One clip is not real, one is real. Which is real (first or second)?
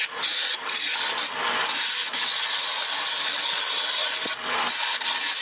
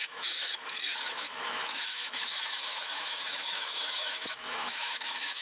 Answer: first